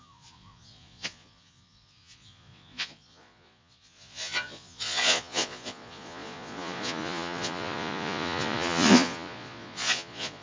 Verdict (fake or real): fake